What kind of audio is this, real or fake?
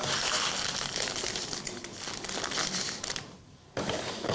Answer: real